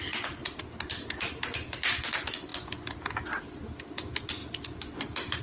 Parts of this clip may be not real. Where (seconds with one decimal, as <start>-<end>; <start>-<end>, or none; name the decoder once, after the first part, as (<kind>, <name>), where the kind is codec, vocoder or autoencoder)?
none